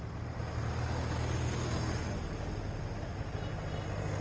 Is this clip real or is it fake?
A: real